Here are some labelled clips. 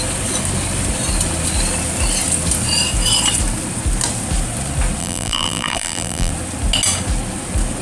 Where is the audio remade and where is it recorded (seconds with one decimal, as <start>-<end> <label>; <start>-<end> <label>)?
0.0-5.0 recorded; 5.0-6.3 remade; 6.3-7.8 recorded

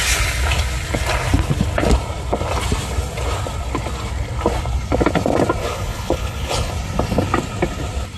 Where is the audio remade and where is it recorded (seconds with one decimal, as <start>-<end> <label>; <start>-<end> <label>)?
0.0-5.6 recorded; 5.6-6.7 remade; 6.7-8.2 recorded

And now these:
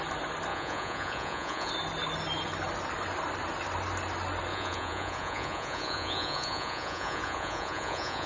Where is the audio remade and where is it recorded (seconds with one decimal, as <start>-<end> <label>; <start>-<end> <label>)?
0.0-0.5 recorded; 0.5-1.7 remade; 1.7-4.5 recorded; 4.5-8.3 remade

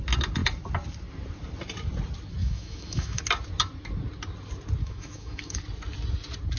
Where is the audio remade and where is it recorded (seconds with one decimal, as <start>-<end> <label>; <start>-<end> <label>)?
0.0-2.4 recorded; 2.4-3.2 remade; 3.2-4.8 recorded; 4.8-5.6 remade; 5.6-6.6 recorded

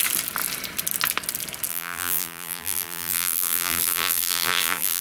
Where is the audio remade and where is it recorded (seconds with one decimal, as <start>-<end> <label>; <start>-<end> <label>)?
0.0-1.7 recorded; 1.7-5.0 remade

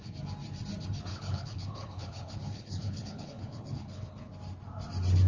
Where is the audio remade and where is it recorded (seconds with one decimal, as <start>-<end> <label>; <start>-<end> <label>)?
0.0-1.1 recorded; 1.1-4.3 remade; 4.3-5.3 recorded

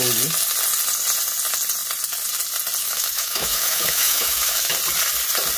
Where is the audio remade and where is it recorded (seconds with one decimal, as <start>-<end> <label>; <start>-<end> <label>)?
0.0-2.8 recorded; 2.8-4.7 remade; 4.7-5.6 recorded